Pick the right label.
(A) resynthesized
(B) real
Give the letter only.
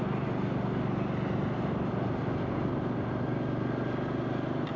B